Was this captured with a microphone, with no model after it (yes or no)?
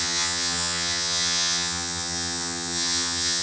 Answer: no